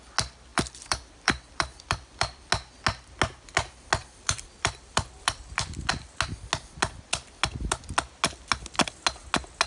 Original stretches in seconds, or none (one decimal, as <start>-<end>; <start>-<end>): 0.0-0.5; 2.5-4.0; 5.9-9.7